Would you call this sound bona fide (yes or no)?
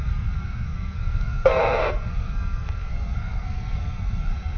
no